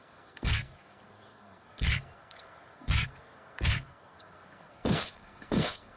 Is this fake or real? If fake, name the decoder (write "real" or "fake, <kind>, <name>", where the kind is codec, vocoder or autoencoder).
fake, codec, SNAC